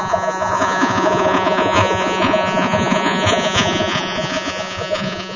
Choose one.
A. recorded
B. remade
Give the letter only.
B